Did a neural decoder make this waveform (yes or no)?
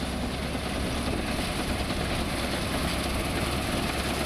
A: no